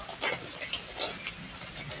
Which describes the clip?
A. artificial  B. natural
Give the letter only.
B